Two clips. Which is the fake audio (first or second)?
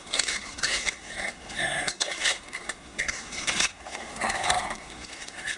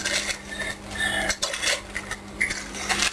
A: first